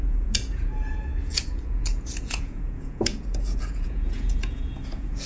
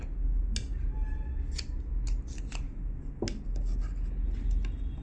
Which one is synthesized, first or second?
first